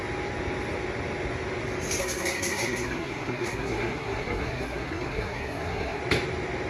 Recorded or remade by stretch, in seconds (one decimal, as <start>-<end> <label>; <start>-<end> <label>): 0.0-2.0 recorded; 2.0-6.0 remade; 6.0-6.7 recorded